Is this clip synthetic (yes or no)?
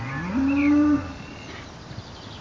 no